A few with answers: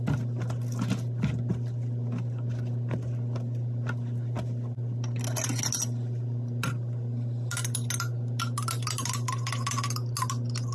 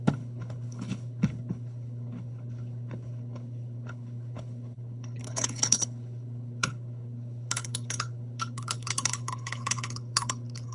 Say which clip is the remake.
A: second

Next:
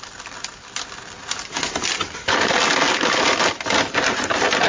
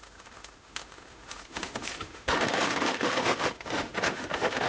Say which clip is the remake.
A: second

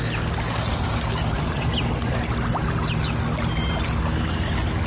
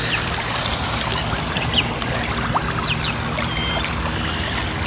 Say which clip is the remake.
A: second